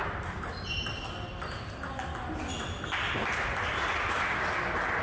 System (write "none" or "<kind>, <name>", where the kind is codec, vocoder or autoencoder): none